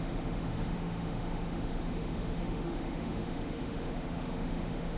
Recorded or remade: remade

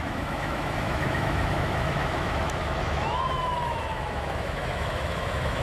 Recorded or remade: remade